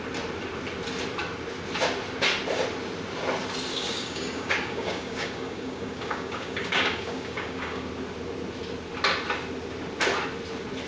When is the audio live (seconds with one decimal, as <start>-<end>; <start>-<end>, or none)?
0.0-3.7; 7.9-10.9